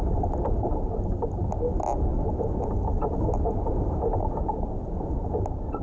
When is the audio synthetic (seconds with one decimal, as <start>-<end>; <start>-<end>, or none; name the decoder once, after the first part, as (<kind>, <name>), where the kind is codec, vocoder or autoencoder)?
none

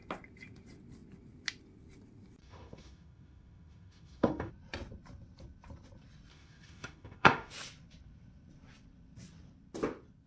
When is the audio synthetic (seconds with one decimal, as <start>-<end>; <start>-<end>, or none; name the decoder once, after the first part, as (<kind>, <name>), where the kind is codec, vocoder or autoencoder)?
2.4-4.5 (autoencoder, DAC-VAE); 6.3-7.5

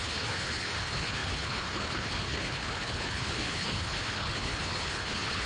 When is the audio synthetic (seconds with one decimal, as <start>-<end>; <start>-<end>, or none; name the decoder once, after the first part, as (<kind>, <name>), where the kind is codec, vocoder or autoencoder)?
0.0-5.5 (codec, HILCodec)

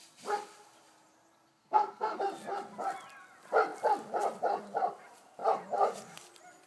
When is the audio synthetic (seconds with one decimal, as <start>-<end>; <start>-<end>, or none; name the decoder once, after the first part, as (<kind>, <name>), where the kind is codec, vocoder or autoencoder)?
1.5-2.2 (codec, SNAC)

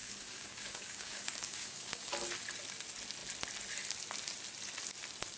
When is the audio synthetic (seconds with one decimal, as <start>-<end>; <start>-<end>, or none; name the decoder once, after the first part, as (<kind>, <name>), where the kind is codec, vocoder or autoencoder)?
0.0-2.1 (codec, DAC)

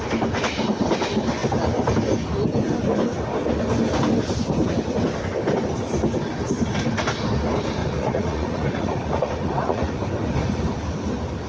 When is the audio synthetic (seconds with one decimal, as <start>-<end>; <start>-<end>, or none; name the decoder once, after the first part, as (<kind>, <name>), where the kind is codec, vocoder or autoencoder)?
7.8-10.0 (vocoder, Vocos)

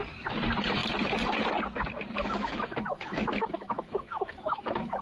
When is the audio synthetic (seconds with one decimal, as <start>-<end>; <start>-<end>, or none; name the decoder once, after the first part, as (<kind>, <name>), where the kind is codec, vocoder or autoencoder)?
2.2-5.0 (autoencoder, DAC-VAE)

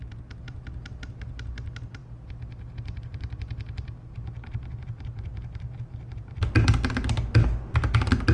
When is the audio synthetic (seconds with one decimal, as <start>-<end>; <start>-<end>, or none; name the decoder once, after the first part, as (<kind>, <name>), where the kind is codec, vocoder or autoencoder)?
none